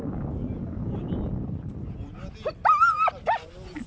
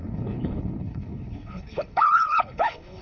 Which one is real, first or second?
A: first